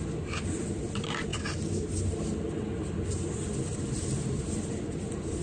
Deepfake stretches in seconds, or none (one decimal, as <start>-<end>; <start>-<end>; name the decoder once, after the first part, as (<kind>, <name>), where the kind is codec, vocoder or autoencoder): none